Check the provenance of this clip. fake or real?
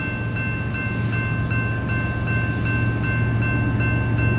real